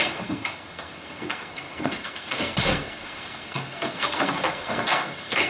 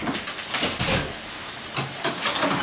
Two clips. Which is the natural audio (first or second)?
second